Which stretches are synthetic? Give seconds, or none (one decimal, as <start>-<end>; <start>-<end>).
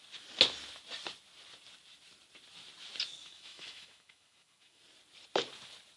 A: 3.2-4.8